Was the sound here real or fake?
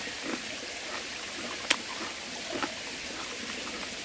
real